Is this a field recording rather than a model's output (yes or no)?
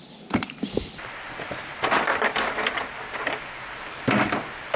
yes